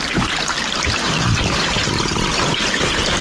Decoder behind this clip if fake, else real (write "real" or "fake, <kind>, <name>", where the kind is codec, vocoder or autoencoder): real